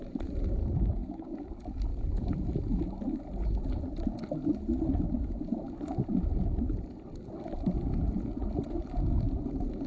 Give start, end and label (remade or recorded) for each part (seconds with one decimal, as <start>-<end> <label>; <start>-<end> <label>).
0.0-0.6 recorded; 0.6-1.5 remade; 1.5-9.9 recorded